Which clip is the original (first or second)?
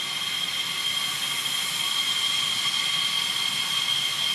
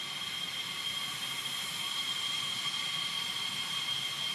first